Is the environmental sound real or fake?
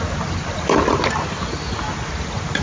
real